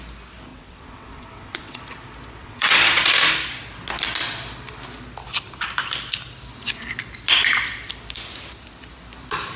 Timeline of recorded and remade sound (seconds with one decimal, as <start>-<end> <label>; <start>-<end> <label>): 0.0-0.5 recorded; 0.5-1.8 remade; 1.8-2.4 recorded; 2.4-3.0 remade; 3.0-9.6 recorded